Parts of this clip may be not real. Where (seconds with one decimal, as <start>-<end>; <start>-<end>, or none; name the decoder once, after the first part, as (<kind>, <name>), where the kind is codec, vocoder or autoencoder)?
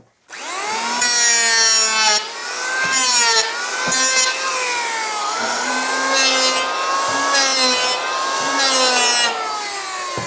5.2-5.7 (codec, SNAC)